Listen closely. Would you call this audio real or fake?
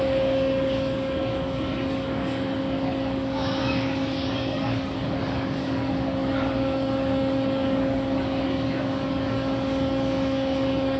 fake